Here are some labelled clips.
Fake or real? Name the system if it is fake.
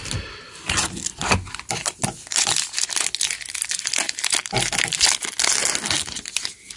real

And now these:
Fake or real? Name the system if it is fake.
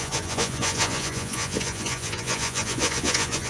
fake, vocoder, Vocos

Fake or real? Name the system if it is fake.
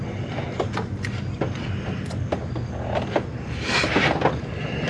real